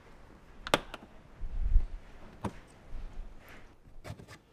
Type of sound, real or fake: real